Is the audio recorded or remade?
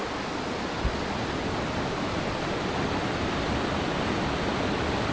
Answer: recorded